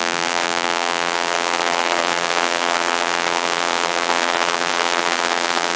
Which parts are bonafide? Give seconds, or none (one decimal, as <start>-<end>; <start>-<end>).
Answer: none